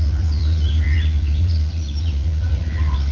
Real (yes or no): no